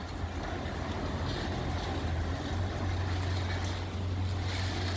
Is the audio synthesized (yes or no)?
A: no